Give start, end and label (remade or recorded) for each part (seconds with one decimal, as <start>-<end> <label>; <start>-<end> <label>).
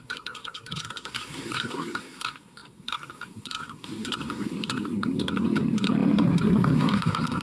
0.0-7.4 remade